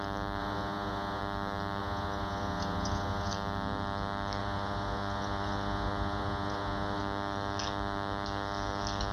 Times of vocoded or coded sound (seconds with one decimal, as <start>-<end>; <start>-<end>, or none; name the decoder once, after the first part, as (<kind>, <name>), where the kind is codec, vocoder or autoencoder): 0.4-1.2 (vocoder, Vocos); 1.8-3.3; 4.4-7.0